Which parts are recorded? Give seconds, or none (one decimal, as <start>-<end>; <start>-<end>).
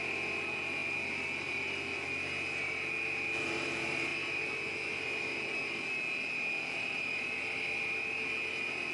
0.0-8.9